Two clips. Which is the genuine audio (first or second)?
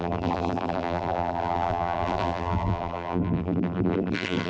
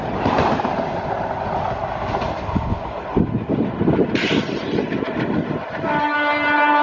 second